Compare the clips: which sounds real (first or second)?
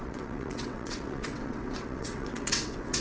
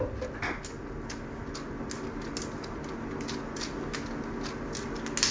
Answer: second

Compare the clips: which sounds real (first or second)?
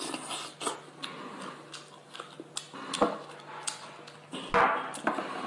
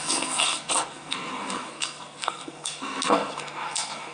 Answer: first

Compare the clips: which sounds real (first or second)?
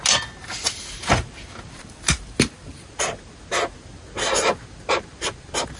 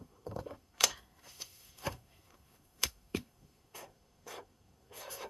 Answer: first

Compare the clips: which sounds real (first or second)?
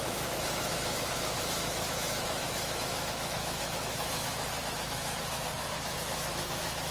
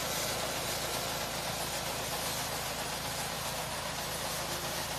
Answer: second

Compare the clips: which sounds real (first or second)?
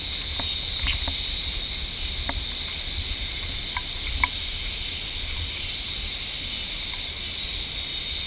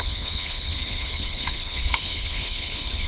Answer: first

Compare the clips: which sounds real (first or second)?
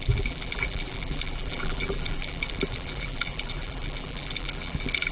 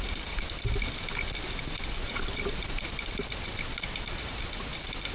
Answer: second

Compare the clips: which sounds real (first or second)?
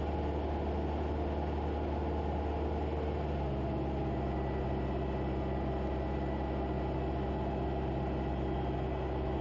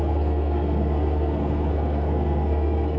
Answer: first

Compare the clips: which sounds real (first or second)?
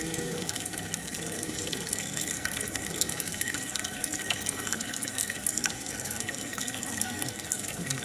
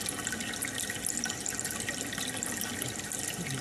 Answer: second